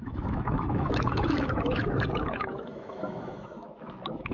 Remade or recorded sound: remade